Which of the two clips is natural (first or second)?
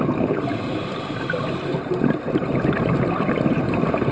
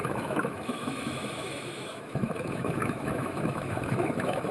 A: first